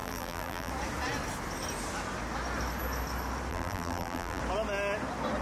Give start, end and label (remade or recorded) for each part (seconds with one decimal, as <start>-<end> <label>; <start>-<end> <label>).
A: 0.0-0.7 remade; 0.7-3.5 recorded; 3.5-4.4 remade; 4.4-5.4 recorded